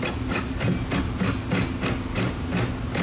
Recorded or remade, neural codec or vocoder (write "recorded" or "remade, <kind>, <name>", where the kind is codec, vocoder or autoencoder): recorded